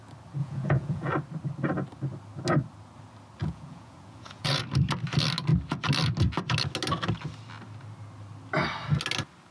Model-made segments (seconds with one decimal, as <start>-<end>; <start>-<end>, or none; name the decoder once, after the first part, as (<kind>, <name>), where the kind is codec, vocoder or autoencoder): 0.4-1.1 (vocoder, Vocos); 3.4-4.6